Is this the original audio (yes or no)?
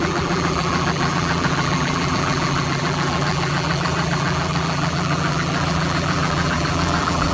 no